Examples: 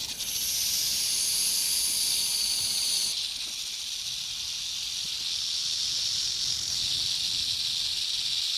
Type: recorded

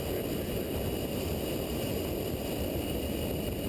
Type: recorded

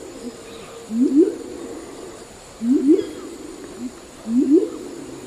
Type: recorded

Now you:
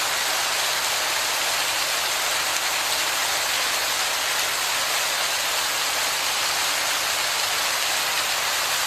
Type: recorded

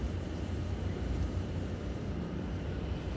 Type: remade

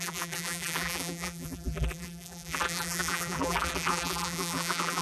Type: remade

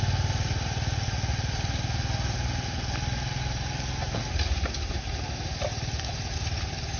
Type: recorded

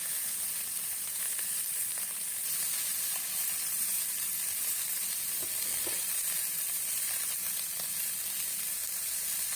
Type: remade